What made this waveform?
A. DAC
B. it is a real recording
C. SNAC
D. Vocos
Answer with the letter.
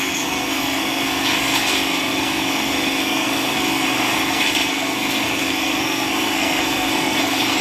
C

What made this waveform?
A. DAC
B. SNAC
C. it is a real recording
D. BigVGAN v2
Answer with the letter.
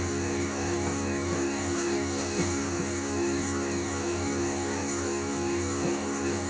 A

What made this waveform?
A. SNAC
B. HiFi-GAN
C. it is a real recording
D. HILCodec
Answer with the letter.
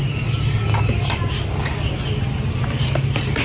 C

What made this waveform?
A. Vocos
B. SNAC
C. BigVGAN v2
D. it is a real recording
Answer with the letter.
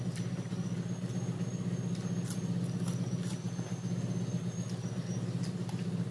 D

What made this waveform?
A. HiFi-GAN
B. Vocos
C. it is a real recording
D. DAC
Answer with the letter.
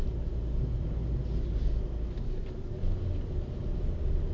C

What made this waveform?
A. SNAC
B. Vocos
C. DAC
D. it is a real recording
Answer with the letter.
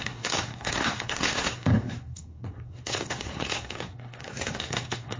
A